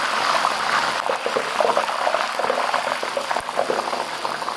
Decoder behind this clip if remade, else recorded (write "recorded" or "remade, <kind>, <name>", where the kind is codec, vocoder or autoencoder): recorded